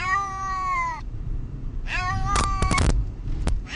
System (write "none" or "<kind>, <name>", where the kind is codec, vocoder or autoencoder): vocoder, BigVGAN v2